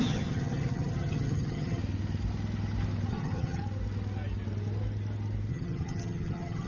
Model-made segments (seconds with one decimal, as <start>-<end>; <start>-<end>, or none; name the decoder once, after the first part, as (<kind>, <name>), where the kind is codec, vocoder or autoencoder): 0.0-1.8 (vocoder, HiFi-GAN); 3.1-3.6; 5.5-6.7